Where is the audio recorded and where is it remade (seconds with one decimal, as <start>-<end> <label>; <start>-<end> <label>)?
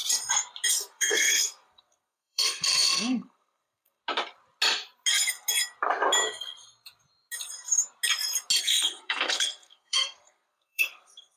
0.0-0.7 recorded; 0.7-4.0 remade; 4.0-8.6 recorded; 8.6-11.4 remade